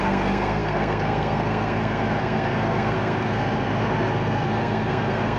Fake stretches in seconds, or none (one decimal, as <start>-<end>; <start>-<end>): 0.0-5.4